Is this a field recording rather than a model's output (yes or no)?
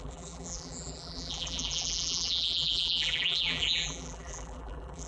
no